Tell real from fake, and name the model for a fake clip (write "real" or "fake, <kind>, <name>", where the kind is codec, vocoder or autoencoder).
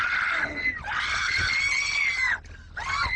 real